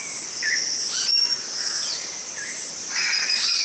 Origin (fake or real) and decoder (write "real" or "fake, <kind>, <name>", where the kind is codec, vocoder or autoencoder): real